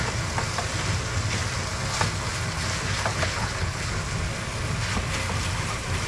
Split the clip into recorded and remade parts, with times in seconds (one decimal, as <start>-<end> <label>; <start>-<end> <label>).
0.0-3.1 recorded; 3.1-3.9 remade; 3.9-6.1 recorded